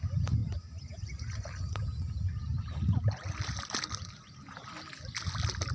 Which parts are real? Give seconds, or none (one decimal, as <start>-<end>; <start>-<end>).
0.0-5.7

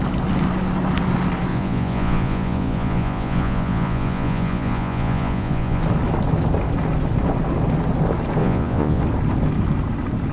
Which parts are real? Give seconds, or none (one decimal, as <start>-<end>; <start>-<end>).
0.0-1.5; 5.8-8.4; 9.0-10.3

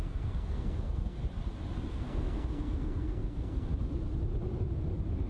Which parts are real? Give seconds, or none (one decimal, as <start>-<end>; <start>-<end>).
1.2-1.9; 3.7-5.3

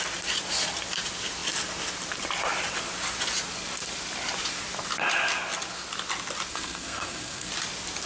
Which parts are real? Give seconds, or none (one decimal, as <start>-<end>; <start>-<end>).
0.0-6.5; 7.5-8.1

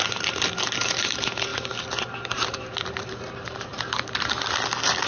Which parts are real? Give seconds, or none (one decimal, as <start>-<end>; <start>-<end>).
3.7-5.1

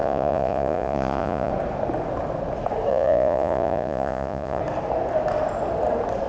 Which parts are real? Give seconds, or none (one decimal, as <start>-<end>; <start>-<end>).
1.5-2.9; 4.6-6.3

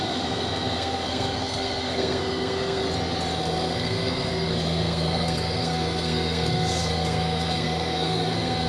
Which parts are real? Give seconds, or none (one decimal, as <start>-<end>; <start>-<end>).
2.8-3.4

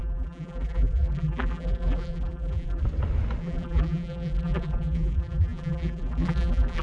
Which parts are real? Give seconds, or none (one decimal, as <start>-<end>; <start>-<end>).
2.8-3.4